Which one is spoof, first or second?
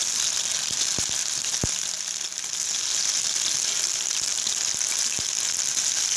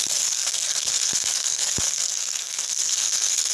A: second